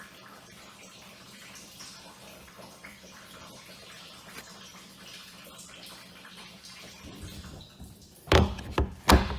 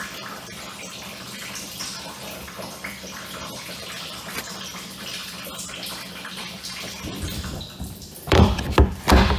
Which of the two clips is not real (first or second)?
second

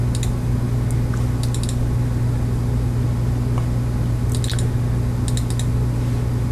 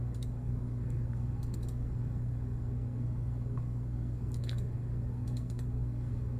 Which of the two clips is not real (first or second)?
second